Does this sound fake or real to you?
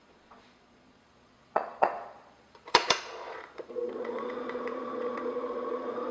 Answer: fake